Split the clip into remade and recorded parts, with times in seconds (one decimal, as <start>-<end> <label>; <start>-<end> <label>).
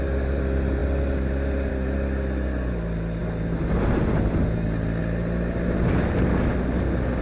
0.0-7.2 recorded